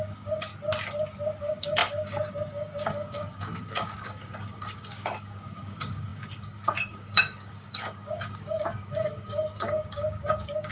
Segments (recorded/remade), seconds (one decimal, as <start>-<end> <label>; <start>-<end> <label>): 0.0-0.5 remade; 0.5-1.4 recorded; 1.4-10.7 remade